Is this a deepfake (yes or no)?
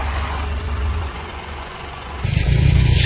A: yes